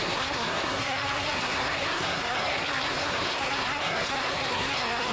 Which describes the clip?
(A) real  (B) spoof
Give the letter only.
B